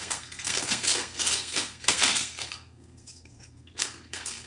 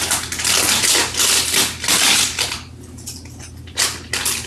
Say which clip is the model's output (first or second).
first